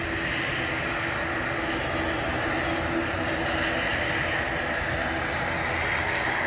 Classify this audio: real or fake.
real